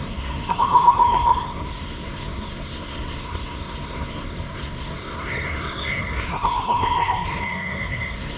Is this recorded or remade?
remade